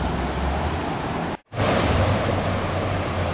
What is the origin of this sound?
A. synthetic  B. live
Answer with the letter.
A